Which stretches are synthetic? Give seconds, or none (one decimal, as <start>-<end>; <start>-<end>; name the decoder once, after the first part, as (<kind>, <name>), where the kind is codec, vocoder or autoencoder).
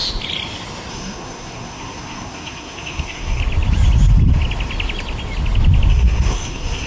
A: 0.9-3.4 (codec, SNAC); 5.9-6.9